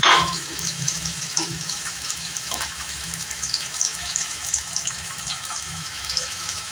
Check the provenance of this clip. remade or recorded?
remade